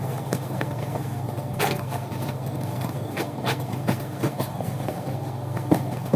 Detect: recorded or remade remade